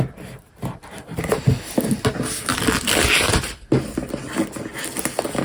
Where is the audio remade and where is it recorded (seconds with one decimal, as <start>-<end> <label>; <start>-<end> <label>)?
0.0-5.4 recorded